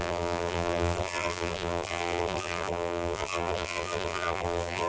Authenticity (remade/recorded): remade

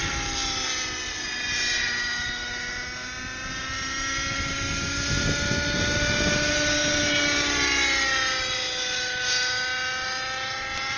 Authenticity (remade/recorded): recorded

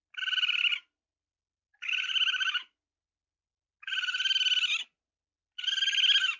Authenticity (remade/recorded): recorded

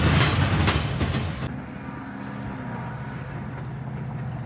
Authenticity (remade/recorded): recorded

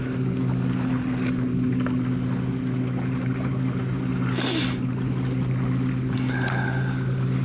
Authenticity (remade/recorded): recorded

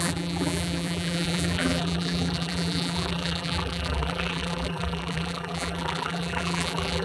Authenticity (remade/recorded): remade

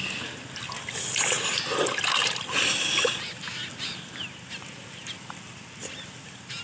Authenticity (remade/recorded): recorded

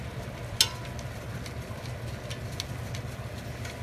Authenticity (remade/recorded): recorded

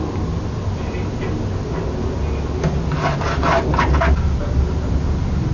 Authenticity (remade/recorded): recorded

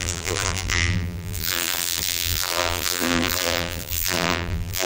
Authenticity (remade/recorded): remade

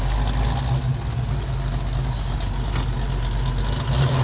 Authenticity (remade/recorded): recorded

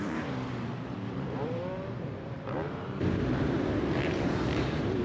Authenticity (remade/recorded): remade